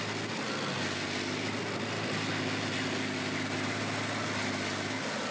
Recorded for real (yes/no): yes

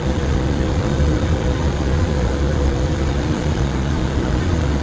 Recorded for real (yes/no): no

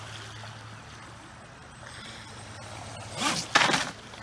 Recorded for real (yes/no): yes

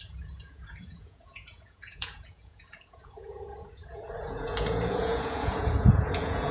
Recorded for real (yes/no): no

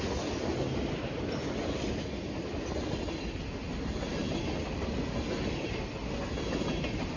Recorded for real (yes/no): yes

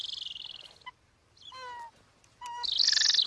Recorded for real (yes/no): yes